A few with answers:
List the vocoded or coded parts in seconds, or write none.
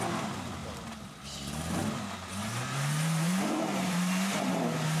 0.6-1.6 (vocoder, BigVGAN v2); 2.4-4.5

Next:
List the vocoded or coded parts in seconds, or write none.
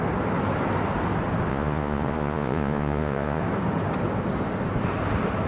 1.5-3.4 (vocoder, Vocos)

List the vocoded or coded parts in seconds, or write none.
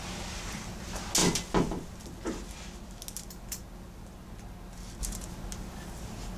none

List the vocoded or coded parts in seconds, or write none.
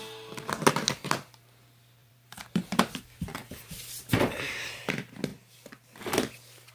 2.0-2.8 (vocoder, BigVGAN v2); 3.4-4.8